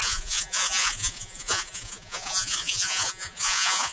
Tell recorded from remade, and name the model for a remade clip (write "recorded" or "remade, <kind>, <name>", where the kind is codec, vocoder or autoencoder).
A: remade, vocoder, Vocos